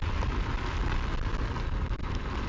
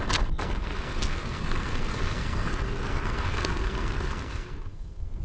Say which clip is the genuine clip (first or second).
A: first